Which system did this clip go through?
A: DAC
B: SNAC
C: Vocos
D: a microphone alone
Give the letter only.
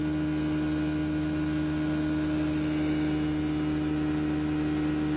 D